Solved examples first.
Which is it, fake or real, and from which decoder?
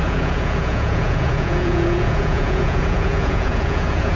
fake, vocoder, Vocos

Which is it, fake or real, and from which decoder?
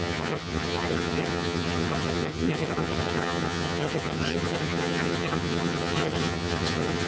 fake, vocoder, HiFi-GAN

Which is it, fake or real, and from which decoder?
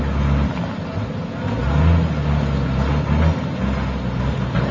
real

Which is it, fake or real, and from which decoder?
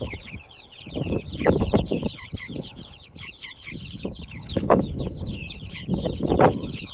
fake, codec, HILCodec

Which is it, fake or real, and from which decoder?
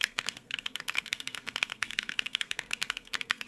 fake, codec, SNAC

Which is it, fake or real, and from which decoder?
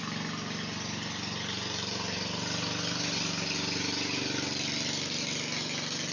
real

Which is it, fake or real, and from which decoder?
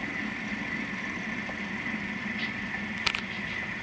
real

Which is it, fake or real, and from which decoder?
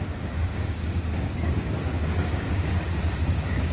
fake, codec, DAC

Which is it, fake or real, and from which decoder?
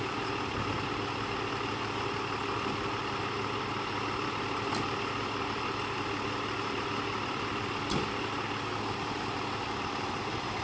real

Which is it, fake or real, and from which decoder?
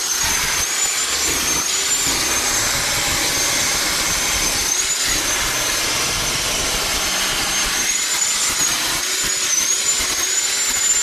real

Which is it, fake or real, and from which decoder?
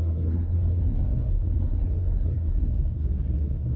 fake, codec, SNAC